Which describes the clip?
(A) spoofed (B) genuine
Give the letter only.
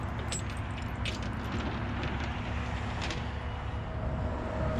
B